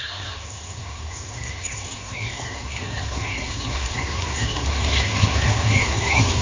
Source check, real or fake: fake